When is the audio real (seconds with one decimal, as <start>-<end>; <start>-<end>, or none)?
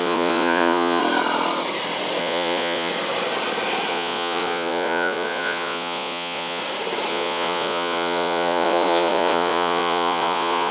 1.0-2.2; 2.9-3.9; 6.6-7.1